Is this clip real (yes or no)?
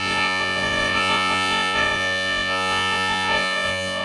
no